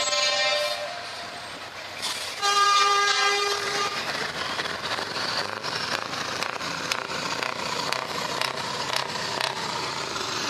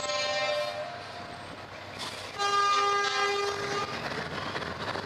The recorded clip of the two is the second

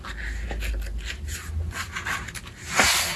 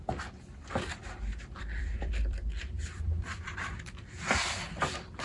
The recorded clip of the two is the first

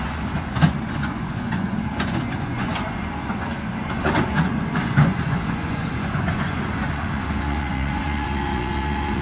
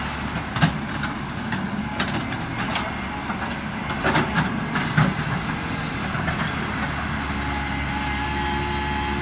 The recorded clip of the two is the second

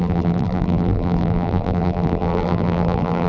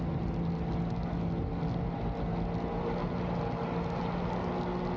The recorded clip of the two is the second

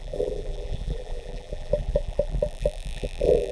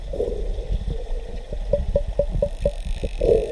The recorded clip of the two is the second